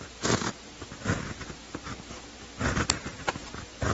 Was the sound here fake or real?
real